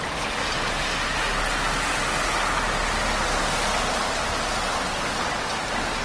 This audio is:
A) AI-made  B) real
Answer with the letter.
B